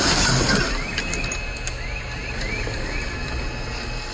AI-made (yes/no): no